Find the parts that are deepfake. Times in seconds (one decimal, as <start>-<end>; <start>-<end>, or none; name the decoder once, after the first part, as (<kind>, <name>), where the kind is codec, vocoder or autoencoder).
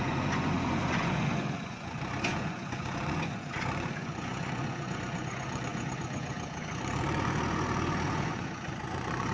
0.0-9.3 (vocoder, Vocos)